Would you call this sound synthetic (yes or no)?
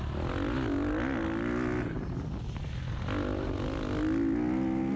no